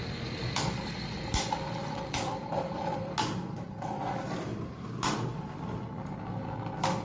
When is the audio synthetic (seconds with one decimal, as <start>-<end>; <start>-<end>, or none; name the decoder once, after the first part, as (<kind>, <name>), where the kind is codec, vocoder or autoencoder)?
1.8-3.1 (vocoder, BigVGAN v2)